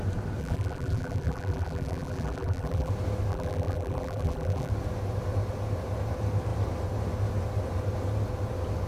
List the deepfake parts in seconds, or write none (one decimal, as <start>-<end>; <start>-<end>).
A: 0.4-2.9; 3.3-4.7